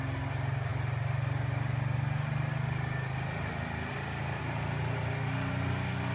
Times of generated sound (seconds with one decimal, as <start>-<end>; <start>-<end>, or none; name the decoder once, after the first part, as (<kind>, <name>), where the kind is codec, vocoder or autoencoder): none